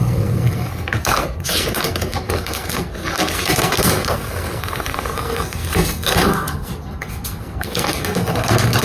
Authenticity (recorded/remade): remade